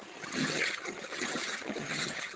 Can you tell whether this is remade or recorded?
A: remade